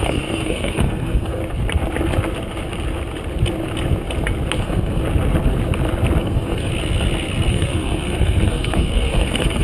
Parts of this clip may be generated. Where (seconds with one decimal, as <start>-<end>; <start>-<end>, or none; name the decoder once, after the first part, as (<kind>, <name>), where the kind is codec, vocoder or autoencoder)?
0.0-1.4 (codec, SNAC); 4.6-5.0; 6.2-6.7; 7.5-9.6